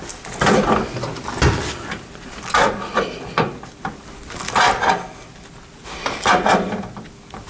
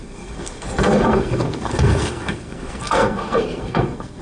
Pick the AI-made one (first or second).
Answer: second